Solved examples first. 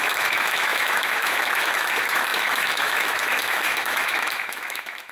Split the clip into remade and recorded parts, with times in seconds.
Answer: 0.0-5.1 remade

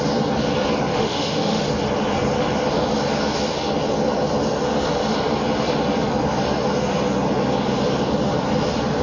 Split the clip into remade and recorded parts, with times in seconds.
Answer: 0.0-0.9 recorded; 0.9-1.6 remade; 1.6-9.0 recorded

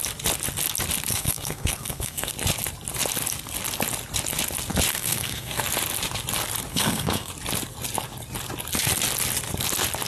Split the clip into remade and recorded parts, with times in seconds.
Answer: 0.0-1.1 recorded; 1.1-2.3 remade; 2.3-4.9 recorded; 4.9-5.6 remade; 5.6-6.7 recorded; 6.7-7.3 remade; 7.3-10.1 recorded

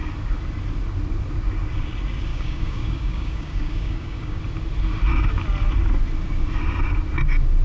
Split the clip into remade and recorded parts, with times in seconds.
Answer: 0.0-2.3 recorded; 2.3-4.4 remade; 4.4-7.6 recorded

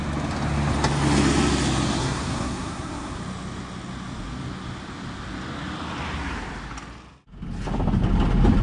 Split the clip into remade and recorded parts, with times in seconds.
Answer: 0.0-2.0 recorded; 2.0-3.2 remade; 3.2-8.6 recorded

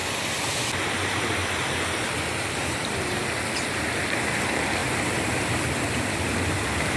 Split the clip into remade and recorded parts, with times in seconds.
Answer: 0.0-7.0 recorded

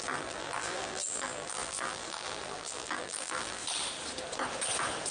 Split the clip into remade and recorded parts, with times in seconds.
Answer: 0.0-3.6 remade; 3.6-5.1 recorded

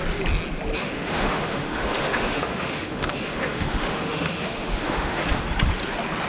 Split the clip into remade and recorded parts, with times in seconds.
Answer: 0.0-0.8 recorded; 0.8-5.2 remade; 5.2-6.3 recorded